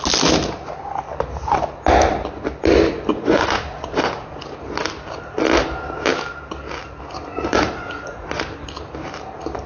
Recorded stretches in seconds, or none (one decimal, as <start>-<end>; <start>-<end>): 0.0-3.1; 4.4-7.5; 8.4-9.7